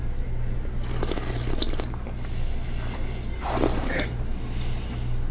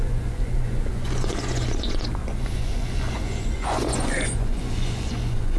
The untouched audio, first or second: first